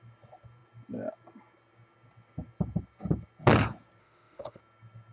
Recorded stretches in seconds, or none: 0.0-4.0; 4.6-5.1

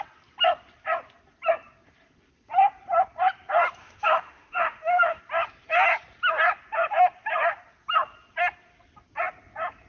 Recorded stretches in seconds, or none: 0.0-3.8; 5.2-9.9

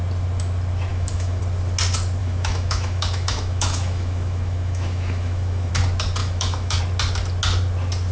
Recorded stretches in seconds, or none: 0.0-0.9; 1.4-2.2; 5.7-6.2; 6.8-8.1

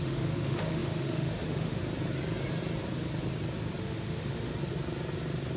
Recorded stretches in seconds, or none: 1.8-3.8; 4.5-5.6

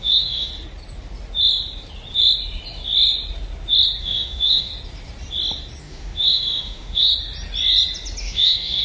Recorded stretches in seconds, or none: 0.5-4.0; 4.7-5.8; 7.1-8.2

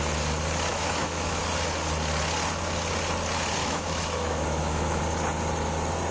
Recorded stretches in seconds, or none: 0.0-0.7; 1.4-3.6; 5.0-6.1